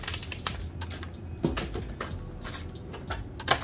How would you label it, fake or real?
real